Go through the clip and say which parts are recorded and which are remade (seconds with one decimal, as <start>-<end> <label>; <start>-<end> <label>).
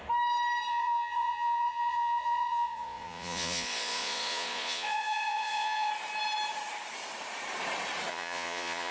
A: 0.0-0.7 recorded; 0.7-5.9 remade; 5.9-8.1 recorded; 8.1-8.9 remade